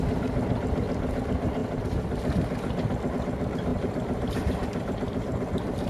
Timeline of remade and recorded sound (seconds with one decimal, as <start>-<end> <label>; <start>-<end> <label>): 0.0-3.7 recorded; 3.7-5.9 remade